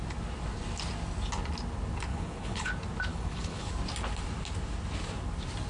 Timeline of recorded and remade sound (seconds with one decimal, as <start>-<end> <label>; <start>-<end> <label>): 0.0-2.1 recorded; 2.1-2.7 remade; 2.7-3.1 recorded; 3.1-3.7 remade; 3.7-5.7 recorded